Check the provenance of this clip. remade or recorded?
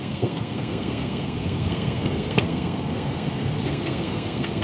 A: remade